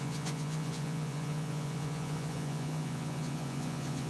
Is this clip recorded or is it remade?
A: remade